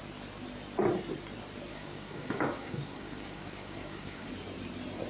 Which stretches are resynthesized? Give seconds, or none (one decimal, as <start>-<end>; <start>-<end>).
1.7-4.3